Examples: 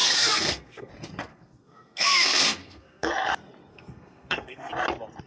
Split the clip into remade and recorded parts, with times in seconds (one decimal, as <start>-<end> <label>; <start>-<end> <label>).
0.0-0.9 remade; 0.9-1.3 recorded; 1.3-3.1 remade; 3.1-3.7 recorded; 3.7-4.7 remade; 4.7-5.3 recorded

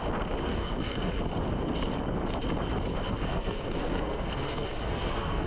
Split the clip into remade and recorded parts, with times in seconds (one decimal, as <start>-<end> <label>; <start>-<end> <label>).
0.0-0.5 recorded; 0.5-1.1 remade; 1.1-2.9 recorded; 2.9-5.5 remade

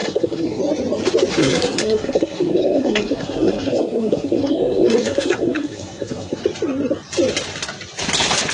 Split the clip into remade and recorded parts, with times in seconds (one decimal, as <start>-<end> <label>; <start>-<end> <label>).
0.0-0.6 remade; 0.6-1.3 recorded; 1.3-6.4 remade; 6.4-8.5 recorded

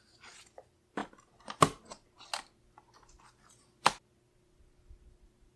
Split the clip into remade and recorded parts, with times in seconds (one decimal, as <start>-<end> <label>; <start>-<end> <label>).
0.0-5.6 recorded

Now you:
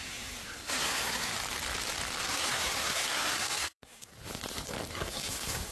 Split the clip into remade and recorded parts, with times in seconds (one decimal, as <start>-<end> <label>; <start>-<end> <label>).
0.0-1.3 remade; 1.3-2.2 recorded; 2.2-4.1 remade; 4.1-4.9 recorded; 4.9-5.7 remade

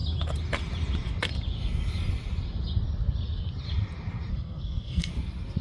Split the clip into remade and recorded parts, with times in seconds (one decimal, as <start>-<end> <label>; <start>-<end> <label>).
0.0-4.3 recorded; 4.3-5.1 remade; 5.1-5.6 recorded